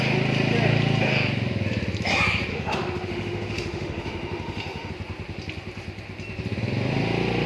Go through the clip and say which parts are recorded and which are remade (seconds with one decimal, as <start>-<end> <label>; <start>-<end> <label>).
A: 0.0-2.5 recorded; 2.5-4.9 remade; 4.9-7.5 recorded